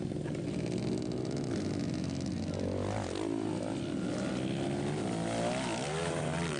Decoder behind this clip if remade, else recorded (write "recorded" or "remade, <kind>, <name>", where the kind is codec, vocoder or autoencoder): recorded